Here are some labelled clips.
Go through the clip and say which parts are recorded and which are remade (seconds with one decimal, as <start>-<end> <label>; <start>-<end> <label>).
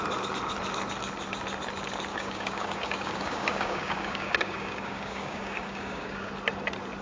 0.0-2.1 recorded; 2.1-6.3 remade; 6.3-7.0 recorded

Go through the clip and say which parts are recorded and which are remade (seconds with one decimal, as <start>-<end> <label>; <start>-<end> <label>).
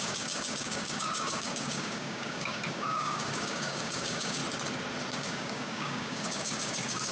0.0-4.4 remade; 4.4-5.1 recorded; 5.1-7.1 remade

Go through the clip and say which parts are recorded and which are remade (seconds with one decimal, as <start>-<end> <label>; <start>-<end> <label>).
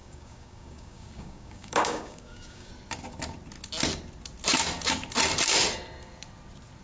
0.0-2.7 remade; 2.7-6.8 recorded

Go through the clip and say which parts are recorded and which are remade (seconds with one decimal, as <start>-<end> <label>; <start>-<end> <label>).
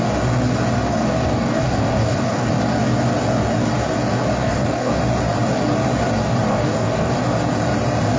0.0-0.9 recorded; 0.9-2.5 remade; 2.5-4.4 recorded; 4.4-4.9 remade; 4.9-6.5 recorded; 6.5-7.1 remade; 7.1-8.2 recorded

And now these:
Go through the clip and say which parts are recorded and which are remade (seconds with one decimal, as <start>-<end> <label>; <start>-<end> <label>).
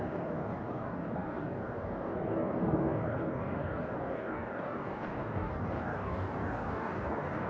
0.0-7.5 remade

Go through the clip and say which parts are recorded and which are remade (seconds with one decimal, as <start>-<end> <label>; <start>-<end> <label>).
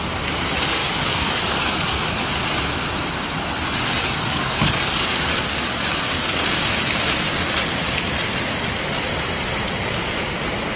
0.0-0.8 recorded; 0.8-2.3 remade; 2.3-4.0 recorded; 4.0-6.4 remade; 6.4-10.8 recorded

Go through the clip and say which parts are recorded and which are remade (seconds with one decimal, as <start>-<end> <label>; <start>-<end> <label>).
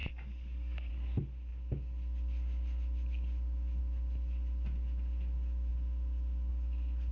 0.0-0.9 remade; 0.9-7.1 recorded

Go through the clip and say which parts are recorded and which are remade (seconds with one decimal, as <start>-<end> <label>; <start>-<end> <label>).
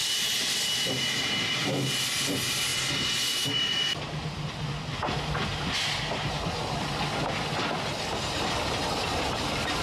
0.0-9.8 recorded